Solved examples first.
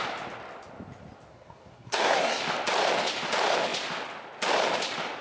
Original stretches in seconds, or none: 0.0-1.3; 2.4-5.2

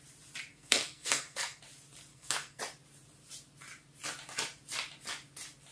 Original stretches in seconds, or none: 0.0-0.5; 1.6-2.1; 2.6-5.7